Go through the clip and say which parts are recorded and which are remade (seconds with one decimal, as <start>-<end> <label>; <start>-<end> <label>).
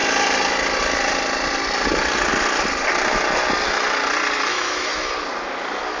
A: 0.0-4.5 recorded; 4.5-5.1 remade; 5.1-6.0 recorded